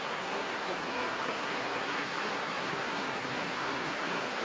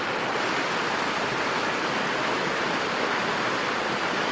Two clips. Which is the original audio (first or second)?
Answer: second